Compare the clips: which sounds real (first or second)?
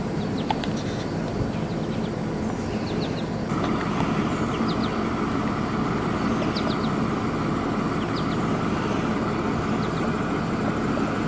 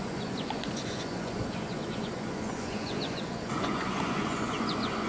first